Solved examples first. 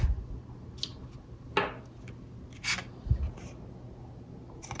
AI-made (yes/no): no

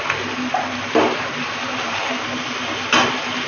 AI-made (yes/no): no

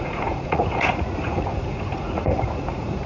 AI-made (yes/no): yes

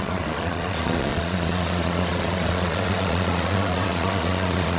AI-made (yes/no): yes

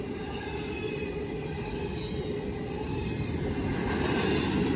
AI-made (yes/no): no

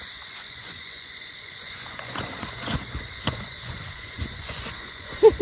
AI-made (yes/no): yes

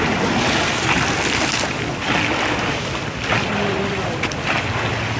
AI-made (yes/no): no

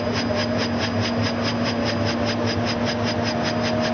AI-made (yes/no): no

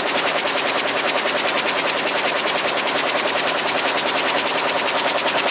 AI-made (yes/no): no